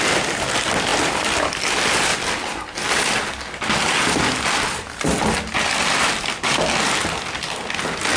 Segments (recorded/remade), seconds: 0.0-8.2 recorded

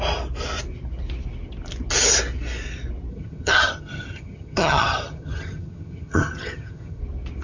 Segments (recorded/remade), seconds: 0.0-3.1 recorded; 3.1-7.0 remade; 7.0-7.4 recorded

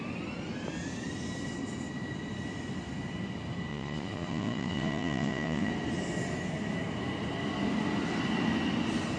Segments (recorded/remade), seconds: 0.0-3.7 recorded; 3.7-5.7 remade; 5.7-9.2 recorded

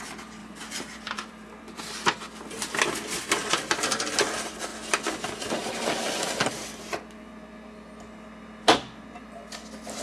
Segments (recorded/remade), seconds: 0.0-0.4 recorded; 0.4-1.8 remade; 1.8-3.4 recorded; 3.4-4.1 remade; 4.1-10.0 recorded

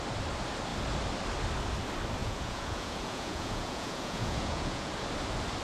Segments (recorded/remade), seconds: 0.0-2.2 recorded; 2.2-4.9 remade; 4.9-5.6 recorded

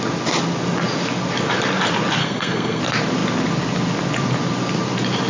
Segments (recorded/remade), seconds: 0.0-2.2 recorded; 2.2-2.8 remade; 2.8-5.3 recorded

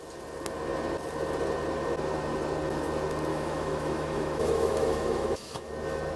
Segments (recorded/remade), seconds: 0.0-3.3 recorded; 3.3-5.7 remade; 5.7-6.2 recorded